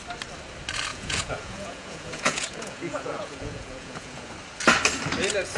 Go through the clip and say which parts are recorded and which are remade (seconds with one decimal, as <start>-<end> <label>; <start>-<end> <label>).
0.0-0.9 recorded; 0.9-4.3 remade; 4.3-5.6 recorded